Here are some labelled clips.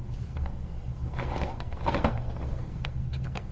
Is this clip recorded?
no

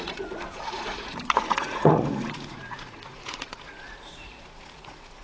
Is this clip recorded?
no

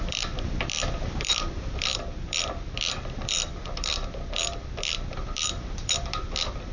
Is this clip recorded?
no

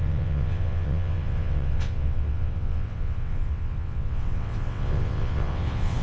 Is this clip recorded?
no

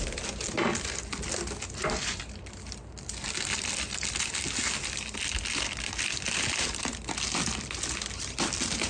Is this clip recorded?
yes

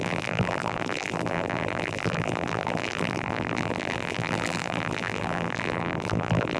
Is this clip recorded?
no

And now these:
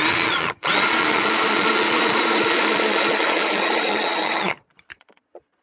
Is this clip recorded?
no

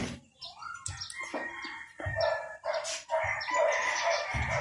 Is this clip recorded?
yes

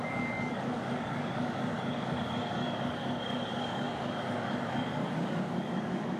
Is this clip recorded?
no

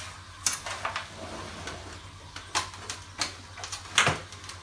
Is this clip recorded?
yes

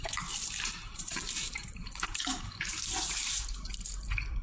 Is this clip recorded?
no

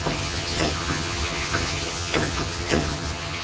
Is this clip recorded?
no